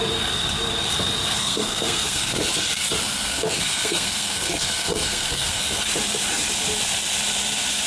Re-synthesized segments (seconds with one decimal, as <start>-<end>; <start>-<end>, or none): 1.4-2.4; 3.3-5.6